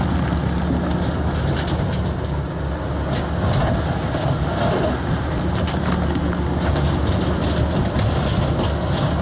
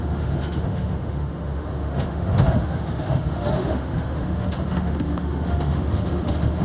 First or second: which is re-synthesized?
second